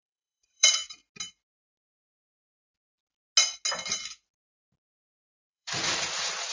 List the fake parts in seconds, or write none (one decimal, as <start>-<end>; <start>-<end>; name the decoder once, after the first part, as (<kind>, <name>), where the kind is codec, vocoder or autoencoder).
0.0-1.0 (vocoder, Vocos); 4.9-6.5